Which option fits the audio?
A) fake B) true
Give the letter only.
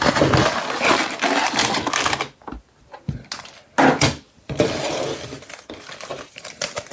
B